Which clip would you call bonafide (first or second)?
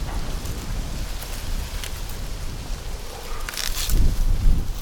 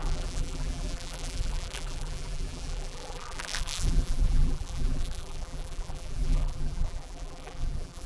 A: first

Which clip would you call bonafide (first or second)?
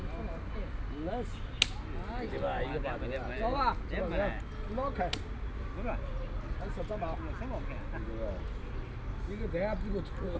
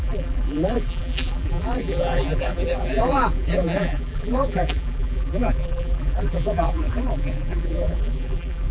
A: first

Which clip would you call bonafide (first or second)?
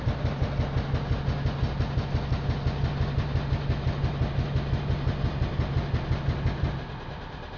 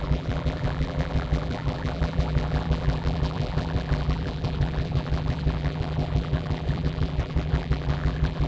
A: first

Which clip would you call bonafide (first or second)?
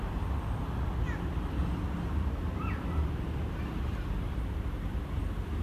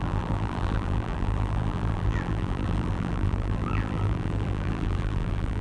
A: first